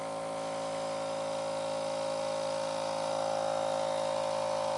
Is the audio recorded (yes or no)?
yes